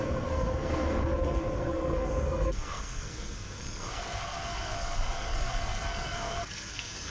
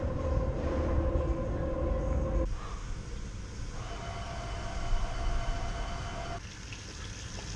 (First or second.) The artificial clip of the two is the first